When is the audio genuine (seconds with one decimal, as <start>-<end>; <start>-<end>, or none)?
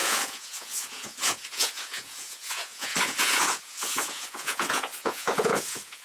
none